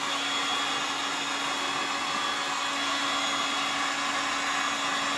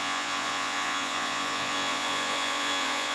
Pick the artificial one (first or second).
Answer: second